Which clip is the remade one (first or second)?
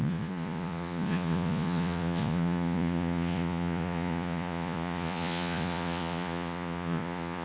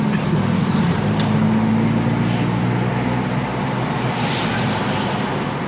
first